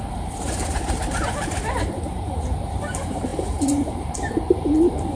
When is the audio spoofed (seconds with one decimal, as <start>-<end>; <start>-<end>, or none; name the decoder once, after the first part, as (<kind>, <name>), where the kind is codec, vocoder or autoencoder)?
0.0-5.2 (vocoder, BigVGAN v2)